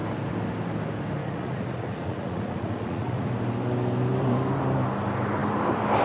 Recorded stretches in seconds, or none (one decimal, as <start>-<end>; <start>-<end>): 0.0-1.2; 3.3-6.0